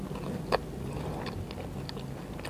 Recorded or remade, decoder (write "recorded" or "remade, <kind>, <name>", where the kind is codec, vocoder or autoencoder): recorded